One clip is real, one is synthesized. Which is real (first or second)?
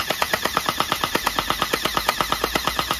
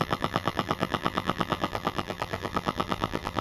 first